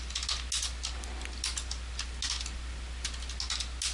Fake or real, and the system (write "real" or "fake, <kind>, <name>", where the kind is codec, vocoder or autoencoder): real